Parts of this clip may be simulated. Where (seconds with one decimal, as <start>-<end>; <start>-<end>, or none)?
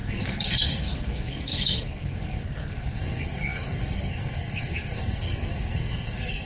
0.0-6.5